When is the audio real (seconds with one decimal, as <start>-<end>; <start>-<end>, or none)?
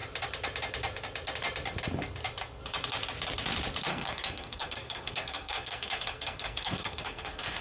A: 0.0-3.9